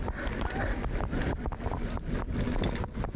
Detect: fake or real real